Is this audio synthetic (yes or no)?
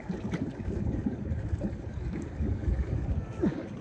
yes